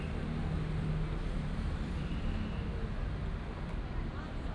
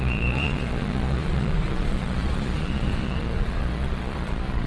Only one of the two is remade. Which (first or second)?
second